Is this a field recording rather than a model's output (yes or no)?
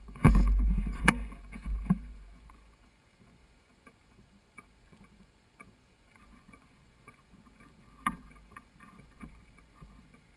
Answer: no